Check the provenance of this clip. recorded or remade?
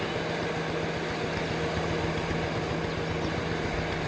recorded